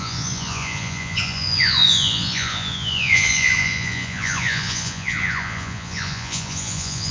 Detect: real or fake fake